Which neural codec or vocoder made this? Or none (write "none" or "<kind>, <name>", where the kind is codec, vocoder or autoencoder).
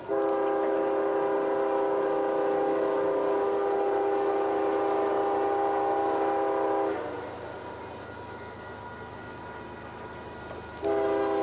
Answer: none